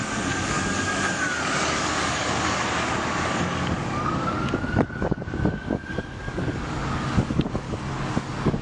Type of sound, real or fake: fake